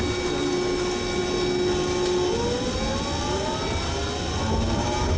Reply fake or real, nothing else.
real